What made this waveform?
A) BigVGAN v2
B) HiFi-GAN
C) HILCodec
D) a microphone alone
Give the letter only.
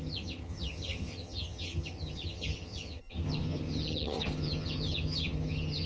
B